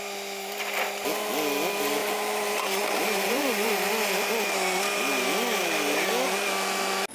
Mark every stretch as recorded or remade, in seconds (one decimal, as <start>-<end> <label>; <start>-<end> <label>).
0.0-2.0 recorded; 2.0-3.9 remade; 3.9-7.1 recorded